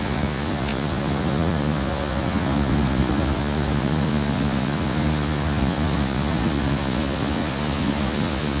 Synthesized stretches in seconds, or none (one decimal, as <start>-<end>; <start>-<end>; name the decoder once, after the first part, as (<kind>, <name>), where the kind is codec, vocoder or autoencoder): 0.0-8.6 (vocoder, Vocos)